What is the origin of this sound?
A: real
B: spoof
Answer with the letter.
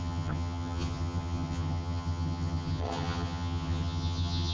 B